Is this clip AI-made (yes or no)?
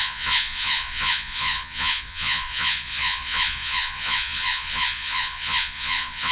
yes